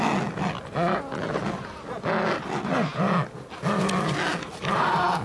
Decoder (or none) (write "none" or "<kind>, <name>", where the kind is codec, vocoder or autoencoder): none